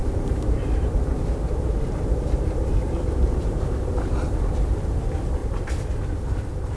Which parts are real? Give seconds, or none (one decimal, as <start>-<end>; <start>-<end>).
4.1-5.4; 5.9-6.8